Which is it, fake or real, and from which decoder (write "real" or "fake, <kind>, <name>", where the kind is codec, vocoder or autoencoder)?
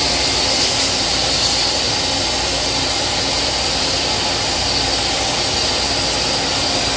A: fake, vocoder, BigVGAN v2